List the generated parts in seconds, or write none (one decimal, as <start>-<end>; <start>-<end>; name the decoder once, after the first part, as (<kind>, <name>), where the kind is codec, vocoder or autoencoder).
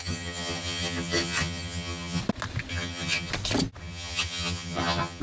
0.0-2.2 (vocoder, HiFi-GAN); 2.7-3.3; 3.8-5.2